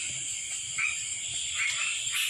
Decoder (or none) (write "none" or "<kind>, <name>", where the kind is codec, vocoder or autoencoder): none